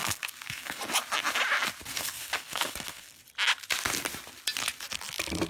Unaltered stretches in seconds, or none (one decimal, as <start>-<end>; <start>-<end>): 0.8-1.9; 3.2-5.5